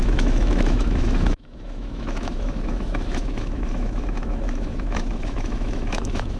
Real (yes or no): no